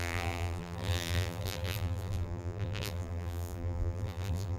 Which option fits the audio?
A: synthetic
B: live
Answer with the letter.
A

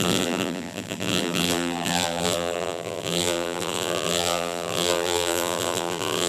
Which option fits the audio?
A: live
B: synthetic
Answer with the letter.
B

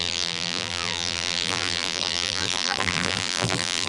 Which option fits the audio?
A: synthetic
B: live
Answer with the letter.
A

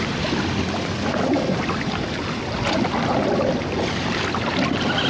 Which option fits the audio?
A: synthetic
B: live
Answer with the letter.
B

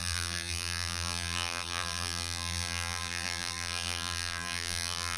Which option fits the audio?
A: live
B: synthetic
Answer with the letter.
B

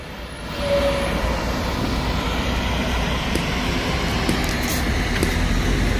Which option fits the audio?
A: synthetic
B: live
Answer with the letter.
B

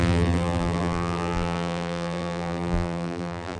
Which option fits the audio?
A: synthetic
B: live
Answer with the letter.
A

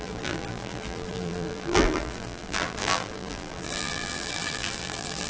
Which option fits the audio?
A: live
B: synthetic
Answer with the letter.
B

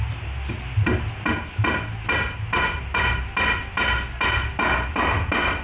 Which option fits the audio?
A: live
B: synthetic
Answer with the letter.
A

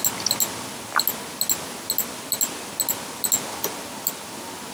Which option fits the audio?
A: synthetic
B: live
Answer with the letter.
B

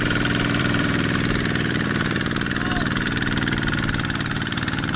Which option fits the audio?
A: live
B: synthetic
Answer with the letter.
B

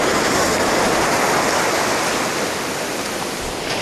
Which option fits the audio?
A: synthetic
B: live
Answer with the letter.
B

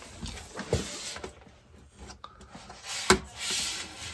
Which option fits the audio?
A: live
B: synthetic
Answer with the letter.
A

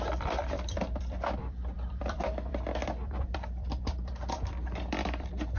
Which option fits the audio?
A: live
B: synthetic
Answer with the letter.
B